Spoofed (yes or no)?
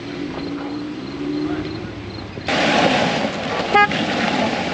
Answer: no